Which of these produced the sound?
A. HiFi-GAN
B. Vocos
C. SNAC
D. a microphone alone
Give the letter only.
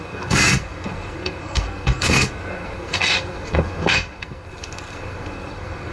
C